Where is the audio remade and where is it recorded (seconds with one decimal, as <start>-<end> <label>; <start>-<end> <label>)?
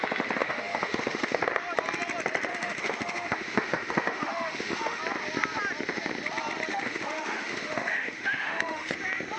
0.0-0.4 recorded; 0.4-1.4 remade; 1.4-2.5 recorded; 2.5-5.0 remade; 5.0-6.7 recorded; 6.7-8.9 remade; 8.9-9.4 recorded